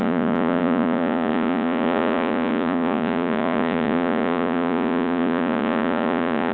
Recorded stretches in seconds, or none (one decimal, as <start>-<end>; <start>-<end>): none